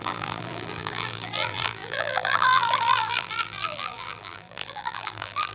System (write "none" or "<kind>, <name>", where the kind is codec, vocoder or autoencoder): vocoder, BigVGAN v2